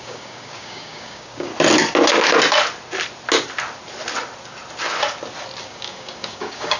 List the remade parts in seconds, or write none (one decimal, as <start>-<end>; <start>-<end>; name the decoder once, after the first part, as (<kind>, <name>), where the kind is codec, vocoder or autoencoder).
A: 0.0-1.5 (codec, DAC); 5.6-6.8